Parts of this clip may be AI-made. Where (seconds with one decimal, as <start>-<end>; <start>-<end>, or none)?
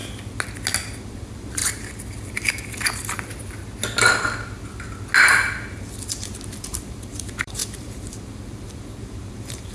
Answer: 1.0-1.6; 6.6-9.7